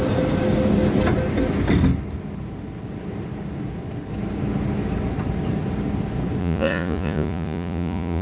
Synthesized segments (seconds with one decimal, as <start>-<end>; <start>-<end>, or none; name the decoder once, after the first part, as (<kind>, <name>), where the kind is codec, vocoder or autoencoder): 6.4-8.2 (vocoder, Vocos)